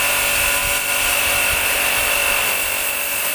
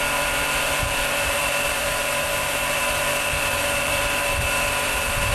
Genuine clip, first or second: first